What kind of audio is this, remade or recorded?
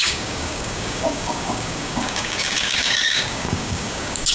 remade